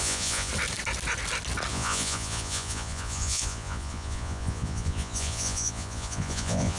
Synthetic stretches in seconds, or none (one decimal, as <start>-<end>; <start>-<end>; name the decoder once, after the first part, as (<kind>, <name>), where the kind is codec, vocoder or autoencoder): 0.0-0.5 (vocoder, Vocos); 1.7-6.8